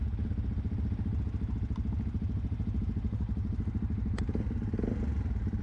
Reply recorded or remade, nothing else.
recorded